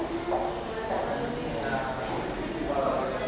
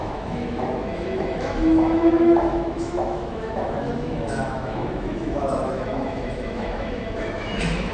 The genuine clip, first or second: first